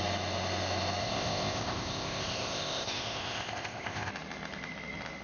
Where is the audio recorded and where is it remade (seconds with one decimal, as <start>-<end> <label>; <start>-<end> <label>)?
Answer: 0.0-1.0 recorded; 1.0-4.1 remade; 4.1-5.2 recorded